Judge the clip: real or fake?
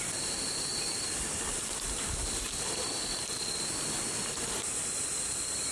real